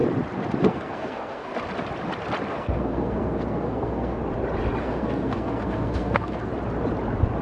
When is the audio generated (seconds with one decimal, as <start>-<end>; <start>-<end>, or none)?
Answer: 0.6-1.5; 2.5-4.2; 4.8-6.5